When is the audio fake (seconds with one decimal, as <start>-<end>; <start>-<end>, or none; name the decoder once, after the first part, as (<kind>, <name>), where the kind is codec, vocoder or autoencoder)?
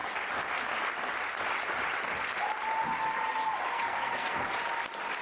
3.7-4.5 (codec, SNAC)